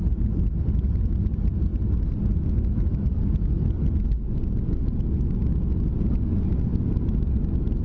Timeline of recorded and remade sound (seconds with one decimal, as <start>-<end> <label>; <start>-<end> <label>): 0.0-7.8 recorded